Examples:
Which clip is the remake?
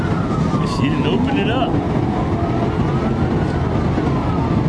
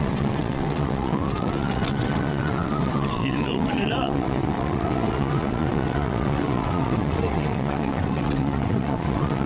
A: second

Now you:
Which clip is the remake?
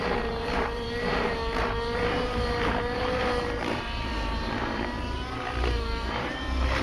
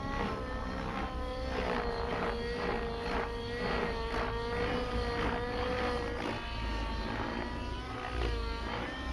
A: first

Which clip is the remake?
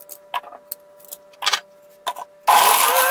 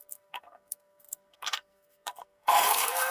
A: second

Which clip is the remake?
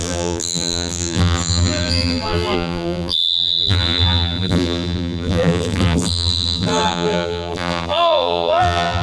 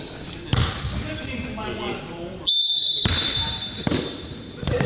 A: first